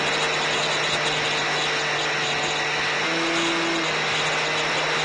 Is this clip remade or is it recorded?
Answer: recorded